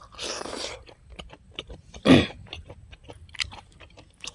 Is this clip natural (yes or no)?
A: no